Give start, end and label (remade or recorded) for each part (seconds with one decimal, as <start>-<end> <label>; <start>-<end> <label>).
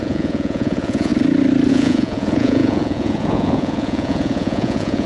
0.0-1.1 remade; 1.1-1.7 recorded; 1.7-5.1 remade